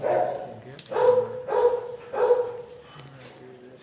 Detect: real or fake real